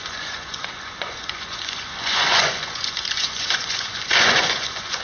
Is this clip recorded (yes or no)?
no